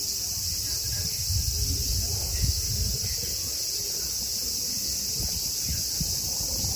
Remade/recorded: recorded